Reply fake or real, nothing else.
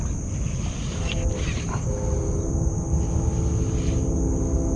real